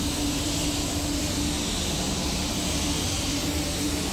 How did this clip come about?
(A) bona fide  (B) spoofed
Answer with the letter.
A